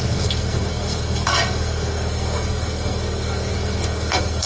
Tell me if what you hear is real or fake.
fake